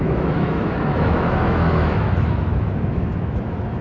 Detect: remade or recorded remade